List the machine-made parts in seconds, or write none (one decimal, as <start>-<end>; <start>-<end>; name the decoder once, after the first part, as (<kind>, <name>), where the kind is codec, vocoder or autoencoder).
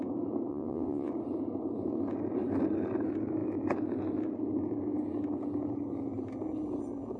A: 0.5-1.1 (vocoder, WaveNeXt)